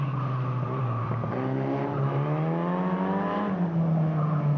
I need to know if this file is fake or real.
real